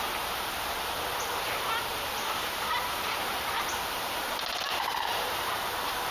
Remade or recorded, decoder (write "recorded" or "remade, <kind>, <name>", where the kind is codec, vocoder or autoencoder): remade, vocoder, BigVGAN v2